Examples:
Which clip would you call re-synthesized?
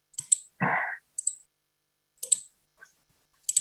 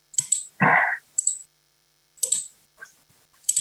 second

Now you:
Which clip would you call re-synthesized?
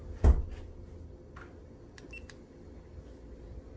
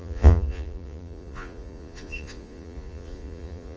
second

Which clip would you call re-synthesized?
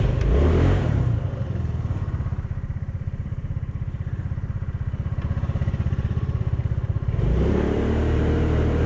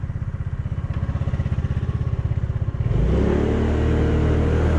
first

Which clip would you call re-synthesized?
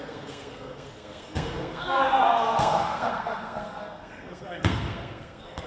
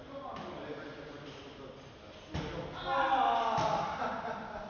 first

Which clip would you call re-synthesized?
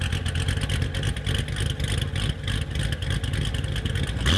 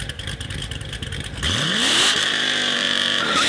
second